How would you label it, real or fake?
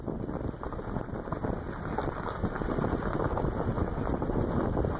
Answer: real